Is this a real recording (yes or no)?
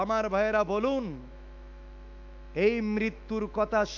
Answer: no